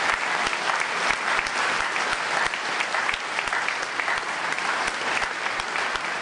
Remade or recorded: recorded